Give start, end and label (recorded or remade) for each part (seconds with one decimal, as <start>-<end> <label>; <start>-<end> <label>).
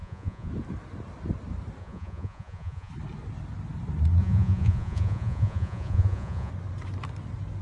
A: 0.0-0.5 remade; 0.5-1.8 recorded; 1.8-2.9 remade; 2.9-4.2 recorded; 4.2-6.5 remade; 6.5-7.6 recorded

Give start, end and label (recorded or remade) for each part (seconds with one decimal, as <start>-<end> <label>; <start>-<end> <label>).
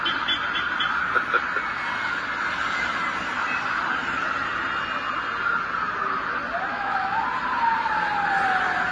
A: 0.0-6.7 recorded; 6.7-7.2 remade; 7.2-8.9 recorded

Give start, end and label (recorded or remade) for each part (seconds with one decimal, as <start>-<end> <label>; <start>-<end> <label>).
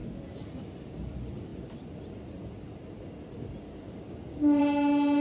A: 0.0-5.2 recorded